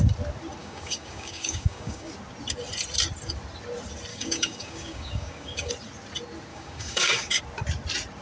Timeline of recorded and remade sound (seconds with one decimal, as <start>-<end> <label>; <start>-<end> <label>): 0.0-0.6 recorded; 0.6-2.1 remade; 2.1-4.1 recorded; 4.1-5.7 remade; 5.7-6.5 recorded; 6.5-7.4 remade; 7.4-8.2 recorded